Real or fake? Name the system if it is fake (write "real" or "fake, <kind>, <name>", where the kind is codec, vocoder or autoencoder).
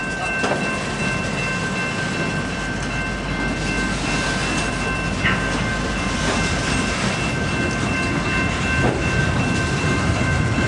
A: real